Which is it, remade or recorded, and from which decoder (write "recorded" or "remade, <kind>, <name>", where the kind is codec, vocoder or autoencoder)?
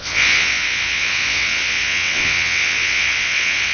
remade, vocoder, WaveNeXt